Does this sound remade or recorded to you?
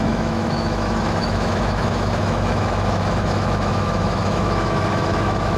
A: remade